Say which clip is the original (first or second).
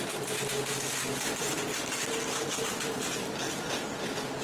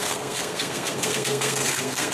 first